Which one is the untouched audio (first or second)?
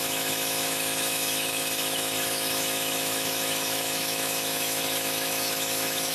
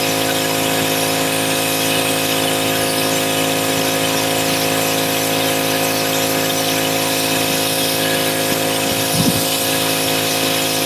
second